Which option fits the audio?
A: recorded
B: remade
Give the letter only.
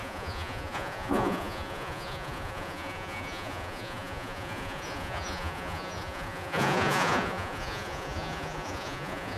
B